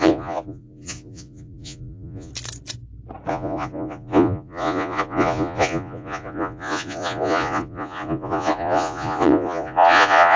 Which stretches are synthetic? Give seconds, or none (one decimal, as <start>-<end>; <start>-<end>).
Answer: 0.0-2.3; 3.3-10.4